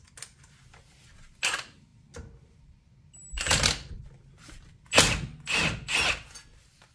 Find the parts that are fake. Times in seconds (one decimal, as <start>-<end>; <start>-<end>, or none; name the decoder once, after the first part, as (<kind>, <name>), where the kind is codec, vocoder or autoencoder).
none